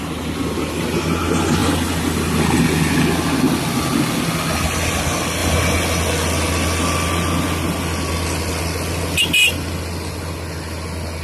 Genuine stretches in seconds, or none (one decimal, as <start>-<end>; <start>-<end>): 0.0-11.2